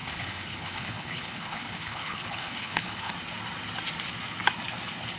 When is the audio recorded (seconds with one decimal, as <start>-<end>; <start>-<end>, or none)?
3.1-5.2